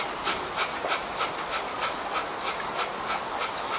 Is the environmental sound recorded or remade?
recorded